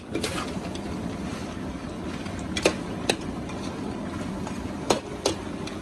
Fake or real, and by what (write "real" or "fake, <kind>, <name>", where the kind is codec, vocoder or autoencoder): real